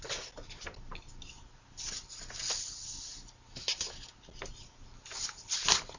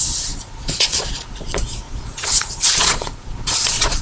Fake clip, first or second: second